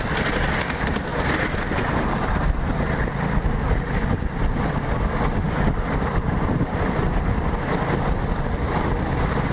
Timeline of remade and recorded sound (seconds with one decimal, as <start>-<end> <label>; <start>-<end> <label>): 0.0-9.5 recorded